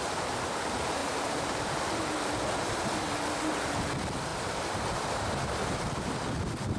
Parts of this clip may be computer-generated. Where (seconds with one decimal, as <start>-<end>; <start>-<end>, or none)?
1.0-1.6